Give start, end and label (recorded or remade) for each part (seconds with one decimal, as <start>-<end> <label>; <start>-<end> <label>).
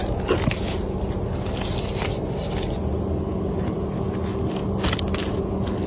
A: 0.0-5.9 recorded